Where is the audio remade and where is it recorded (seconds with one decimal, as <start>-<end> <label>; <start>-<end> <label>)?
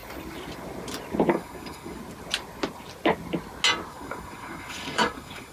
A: 0.0-1.3 recorded; 1.3-2.0 remade; 2.0-3.9 recorded; 3.9-5.5 remade